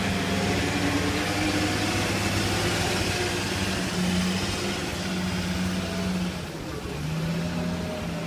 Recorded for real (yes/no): yes